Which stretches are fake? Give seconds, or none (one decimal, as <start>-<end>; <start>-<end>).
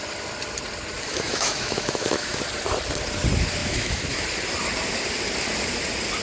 1.1-2.4; 3.6-4.2